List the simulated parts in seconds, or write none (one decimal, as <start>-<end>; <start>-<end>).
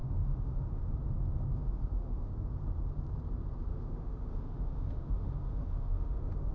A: 0.0-0.8; 1.5-2.3; 3.7-6.5